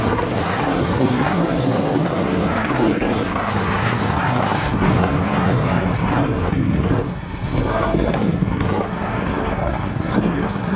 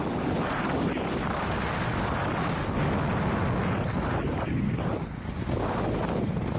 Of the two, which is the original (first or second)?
second